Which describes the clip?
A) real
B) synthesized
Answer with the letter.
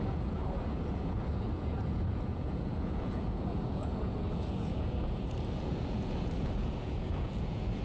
B